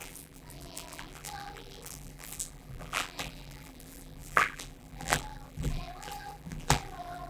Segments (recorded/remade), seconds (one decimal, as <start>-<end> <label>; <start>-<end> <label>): 0.0-7.3 remade